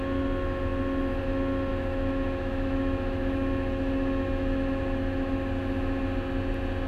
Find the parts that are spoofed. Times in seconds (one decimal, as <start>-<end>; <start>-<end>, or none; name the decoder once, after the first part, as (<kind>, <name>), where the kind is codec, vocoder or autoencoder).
1.7-5.5 (autoencoder, DAC-VAE)

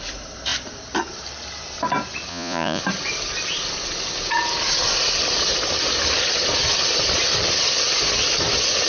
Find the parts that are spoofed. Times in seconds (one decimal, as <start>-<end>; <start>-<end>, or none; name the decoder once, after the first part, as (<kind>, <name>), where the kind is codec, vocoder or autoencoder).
2.3-2.8 (vocoder, Vocos)